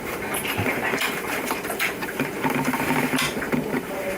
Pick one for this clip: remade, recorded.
remade